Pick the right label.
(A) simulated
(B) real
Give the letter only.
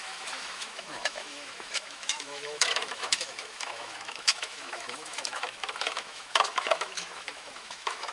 A